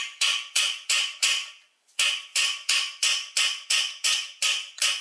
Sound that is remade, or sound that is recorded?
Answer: remade